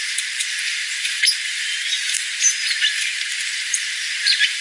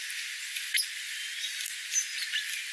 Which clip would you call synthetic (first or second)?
first